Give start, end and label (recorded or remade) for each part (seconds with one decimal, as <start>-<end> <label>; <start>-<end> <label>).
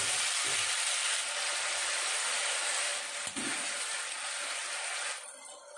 0.0-5.8 recorded